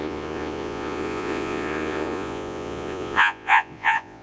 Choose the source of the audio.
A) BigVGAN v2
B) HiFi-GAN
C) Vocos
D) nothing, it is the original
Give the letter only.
C